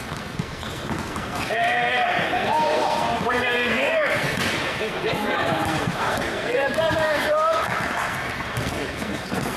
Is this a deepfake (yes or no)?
yes